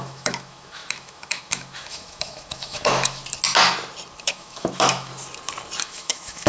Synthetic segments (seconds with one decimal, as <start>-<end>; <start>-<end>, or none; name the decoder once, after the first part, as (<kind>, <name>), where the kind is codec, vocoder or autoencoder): 0.0-3.2 (autoencoder, DAC-VAE); 4.2-5.1; 5.8-6.5

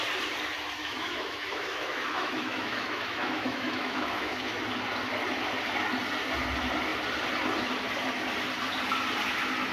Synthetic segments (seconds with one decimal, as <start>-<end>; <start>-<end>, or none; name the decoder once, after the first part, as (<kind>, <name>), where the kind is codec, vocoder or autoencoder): 0.8-4.6 (autoencoder, DAC-VAE)